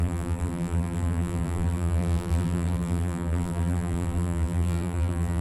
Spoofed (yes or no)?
yes